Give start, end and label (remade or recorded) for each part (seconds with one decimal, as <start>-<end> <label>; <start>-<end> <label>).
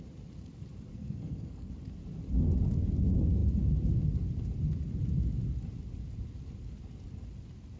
0.0-0.9 recorded; 0.9-1.7 remade; 1.7-7.8 recorded